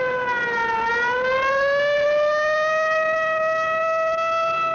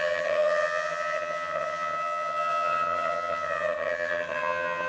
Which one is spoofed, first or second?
second